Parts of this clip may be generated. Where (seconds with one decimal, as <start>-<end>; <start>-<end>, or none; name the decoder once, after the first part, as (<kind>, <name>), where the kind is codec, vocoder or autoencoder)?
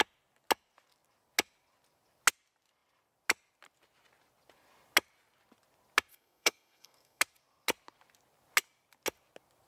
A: 6.1-7.2 (codec, SNAC)